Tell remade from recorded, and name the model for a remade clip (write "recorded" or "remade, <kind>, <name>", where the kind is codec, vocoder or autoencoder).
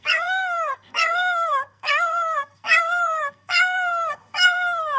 remade, codec, SNAC